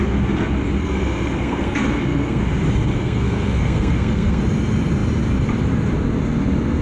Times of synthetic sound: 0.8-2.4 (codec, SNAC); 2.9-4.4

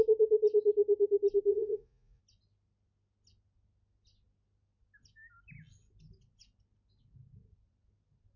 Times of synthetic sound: 1.5-2.2 (vocoder, Vocos)

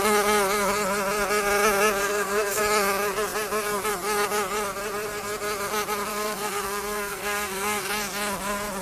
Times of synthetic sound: 2.0-2.6 (codec, SNAC); 6.1-7.9

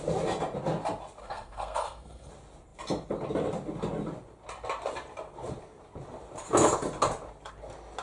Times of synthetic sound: 1.2-2.3 (codec, SNAC)

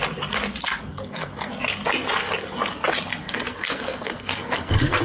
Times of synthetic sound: 0.7-1.5 (codec, SNAC); 3.2-5.0